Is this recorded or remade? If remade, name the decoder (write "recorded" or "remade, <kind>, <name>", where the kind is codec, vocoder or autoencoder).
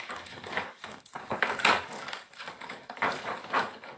remade, codec, DAC